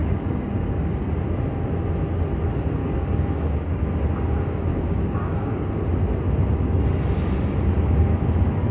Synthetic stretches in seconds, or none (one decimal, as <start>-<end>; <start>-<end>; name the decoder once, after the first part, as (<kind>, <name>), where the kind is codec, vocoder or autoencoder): 0.0-1.1 (codec, DAC); 2.8-3.9; 4.7-5.7